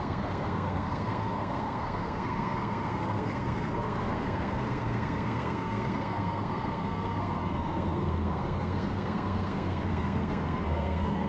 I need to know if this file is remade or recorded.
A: remade